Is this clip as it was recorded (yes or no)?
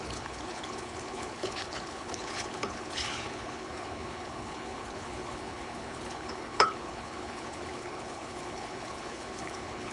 no